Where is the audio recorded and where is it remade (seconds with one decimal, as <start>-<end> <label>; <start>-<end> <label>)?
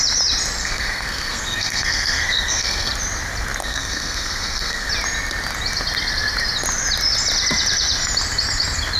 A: 0.0-0.6 recorded; 0.6-2.9 remade; 2.9-3.6 recorded; 3.6-4.9 remade; 4.9-9.0 recorded